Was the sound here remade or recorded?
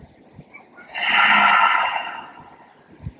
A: recorded